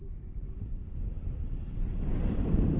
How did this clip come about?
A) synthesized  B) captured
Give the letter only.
B